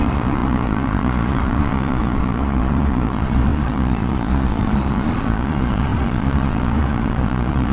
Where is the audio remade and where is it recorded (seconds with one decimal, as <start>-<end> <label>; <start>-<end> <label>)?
0.0-7.7 remade